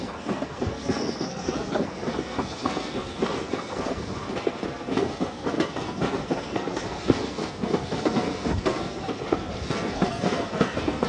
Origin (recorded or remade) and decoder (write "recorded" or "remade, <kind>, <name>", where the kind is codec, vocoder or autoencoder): remade, codec, SNAC